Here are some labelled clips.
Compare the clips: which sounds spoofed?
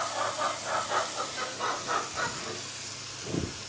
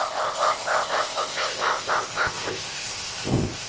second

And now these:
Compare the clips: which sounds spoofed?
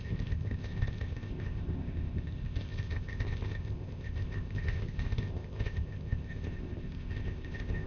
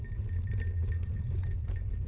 first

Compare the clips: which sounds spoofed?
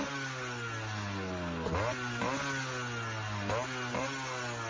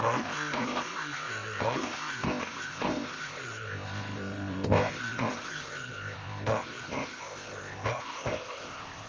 second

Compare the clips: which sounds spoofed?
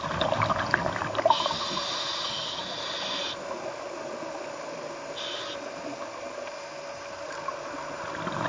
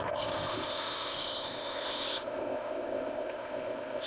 second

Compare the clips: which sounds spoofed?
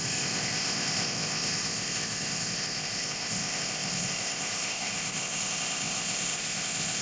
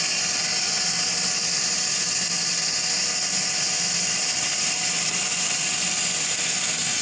first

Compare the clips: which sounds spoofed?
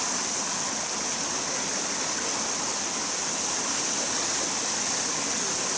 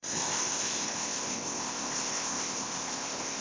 second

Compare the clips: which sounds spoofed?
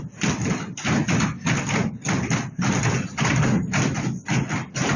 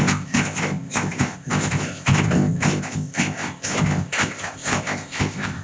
second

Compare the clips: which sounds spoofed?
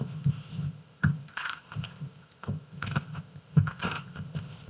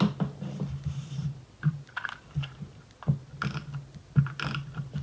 first